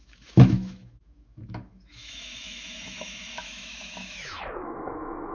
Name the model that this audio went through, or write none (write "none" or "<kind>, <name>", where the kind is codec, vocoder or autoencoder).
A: autoencoder, DAC-VAE